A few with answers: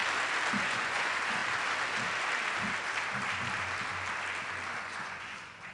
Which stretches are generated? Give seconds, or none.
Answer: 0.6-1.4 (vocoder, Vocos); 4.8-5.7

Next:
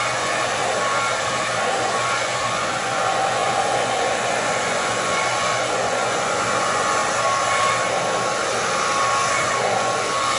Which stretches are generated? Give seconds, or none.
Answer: 0.0-0.6 (vocoder, Vocos); 1.6-7.0; 9.3-10.4

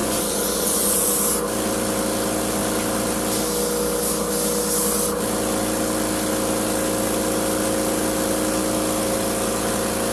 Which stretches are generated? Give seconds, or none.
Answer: 0.0-1.1 (vocoder, Vocos)

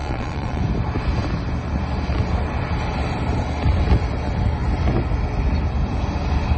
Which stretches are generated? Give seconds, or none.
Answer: 0.0-0.6 (vocoder, Vocos)

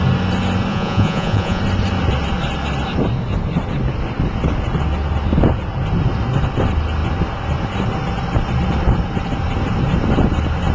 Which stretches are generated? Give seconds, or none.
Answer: 0.7-1.6 (vocoder, Vocos)

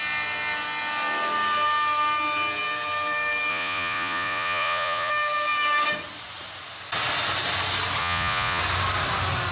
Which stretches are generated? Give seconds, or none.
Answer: 3.5-5.1 (vocoder, Vocos); 8.0-8.6